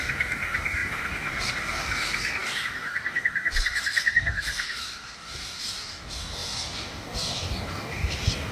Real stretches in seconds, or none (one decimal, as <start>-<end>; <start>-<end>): none